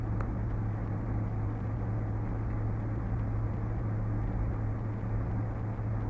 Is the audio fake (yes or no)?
no